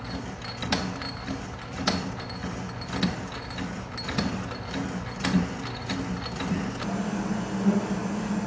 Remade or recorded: recorded